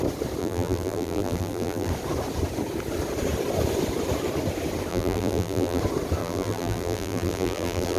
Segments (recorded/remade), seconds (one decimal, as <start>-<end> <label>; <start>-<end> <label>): 0.0-0.4 recorded; 0.4-1.9 remade; 1.9-4.9 recorded; 4.9-5.8 remade; 5.8-6.2 recorded; 6.2-8.0 remade